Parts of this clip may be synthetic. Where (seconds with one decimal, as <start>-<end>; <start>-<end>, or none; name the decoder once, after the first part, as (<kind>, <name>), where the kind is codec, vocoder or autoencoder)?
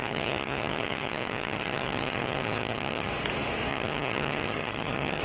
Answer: 0.0-3.1 (vocoder, HiFi-GAN); 3.7-5.2